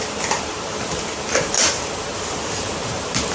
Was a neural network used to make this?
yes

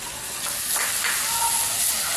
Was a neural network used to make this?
no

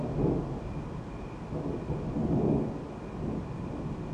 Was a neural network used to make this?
no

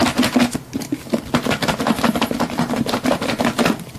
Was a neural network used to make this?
no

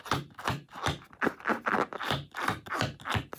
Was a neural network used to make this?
yes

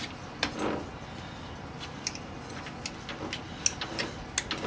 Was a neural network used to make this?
no